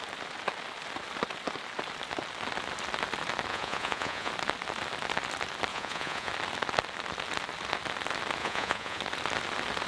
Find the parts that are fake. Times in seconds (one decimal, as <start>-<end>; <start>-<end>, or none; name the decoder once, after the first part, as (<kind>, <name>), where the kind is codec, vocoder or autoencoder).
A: 3.5-4.3 (vocoder, Vocos); 5.7-6.3; 8.4-9.0